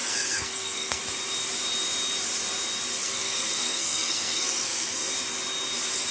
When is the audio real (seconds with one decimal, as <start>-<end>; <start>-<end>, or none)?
1.0-2.9; 5.1-6.1